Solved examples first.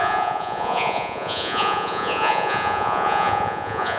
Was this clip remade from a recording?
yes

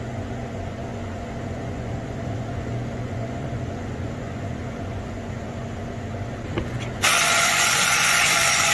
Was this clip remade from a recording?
yes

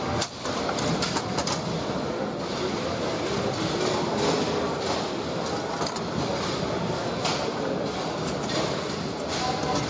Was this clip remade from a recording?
no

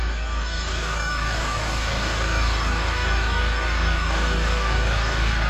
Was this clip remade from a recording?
yes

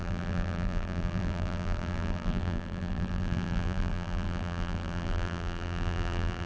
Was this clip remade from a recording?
yes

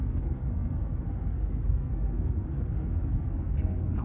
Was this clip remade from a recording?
yes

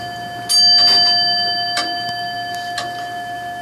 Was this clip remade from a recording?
no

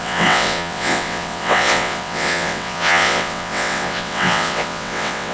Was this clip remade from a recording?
yes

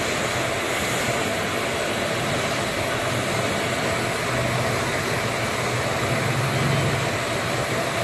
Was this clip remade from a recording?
no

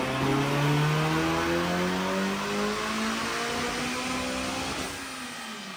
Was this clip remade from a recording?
no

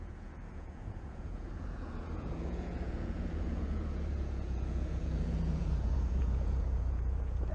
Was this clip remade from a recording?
yes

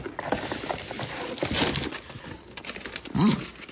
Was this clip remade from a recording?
no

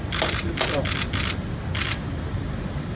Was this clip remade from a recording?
no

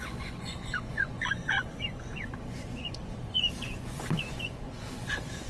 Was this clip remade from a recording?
yes